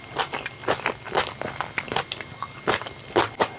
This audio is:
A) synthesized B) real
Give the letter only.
B